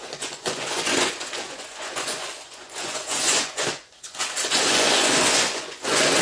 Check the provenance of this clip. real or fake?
fake